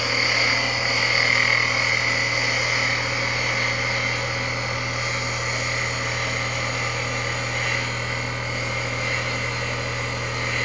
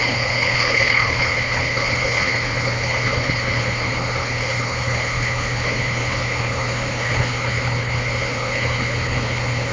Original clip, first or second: first